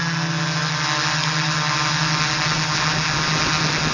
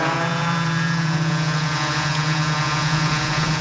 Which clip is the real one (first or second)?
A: first